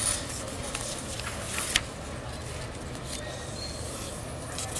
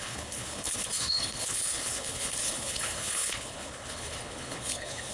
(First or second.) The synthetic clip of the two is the second